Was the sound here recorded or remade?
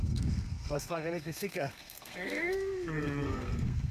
remade